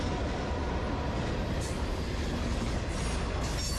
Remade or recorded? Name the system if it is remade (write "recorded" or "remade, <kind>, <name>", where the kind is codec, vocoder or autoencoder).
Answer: recorded